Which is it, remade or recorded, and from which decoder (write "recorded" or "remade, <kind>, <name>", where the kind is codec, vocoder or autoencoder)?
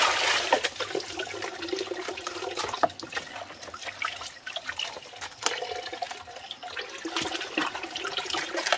recorded